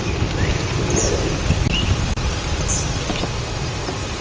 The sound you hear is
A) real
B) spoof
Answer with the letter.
A